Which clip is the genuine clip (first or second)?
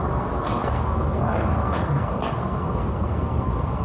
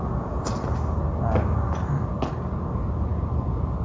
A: second